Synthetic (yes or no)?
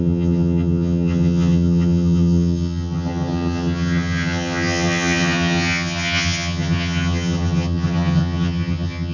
yes